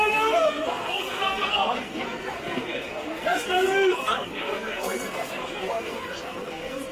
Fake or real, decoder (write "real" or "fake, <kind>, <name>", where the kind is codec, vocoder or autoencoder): fake, codec, SNAC